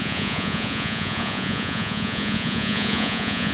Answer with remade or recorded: remade